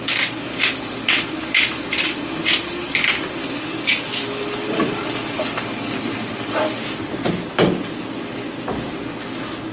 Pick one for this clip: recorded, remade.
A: remade